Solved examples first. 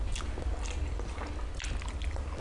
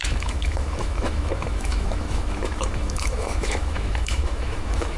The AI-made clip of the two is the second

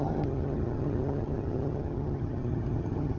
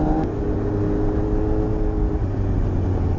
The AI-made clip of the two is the first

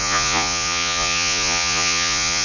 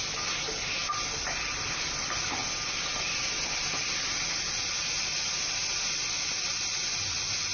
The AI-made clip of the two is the first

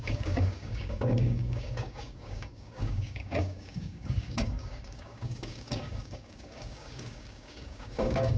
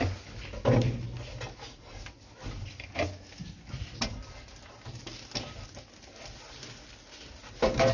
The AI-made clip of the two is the first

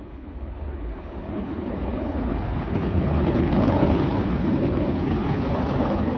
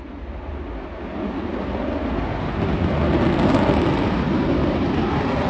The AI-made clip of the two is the first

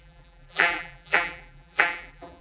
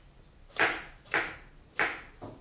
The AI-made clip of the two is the first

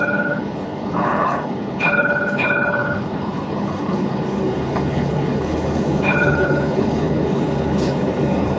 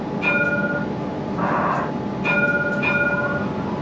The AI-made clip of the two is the first